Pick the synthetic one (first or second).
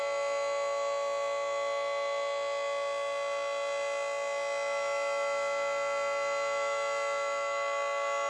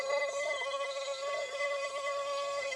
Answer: second